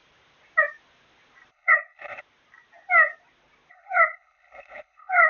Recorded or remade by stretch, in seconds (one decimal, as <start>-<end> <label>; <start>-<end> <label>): 0.0-1.5 recorded; 1.5-2.2 remade; 2.2-3.7 recorded; 3.7-5.3 remade